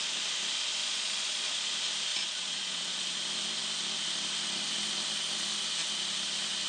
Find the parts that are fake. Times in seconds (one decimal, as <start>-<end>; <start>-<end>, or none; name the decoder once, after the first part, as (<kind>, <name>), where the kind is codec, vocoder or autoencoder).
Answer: 0.8-1.5 (vocoder, Vocos); 2.1-3.2